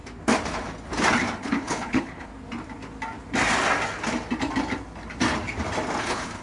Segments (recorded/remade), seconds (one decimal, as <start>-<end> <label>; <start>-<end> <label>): 0.0-1.4 recorded; 1.4-2.3 remade; 2.3-6.0 recorded; 6.0-6.4 remade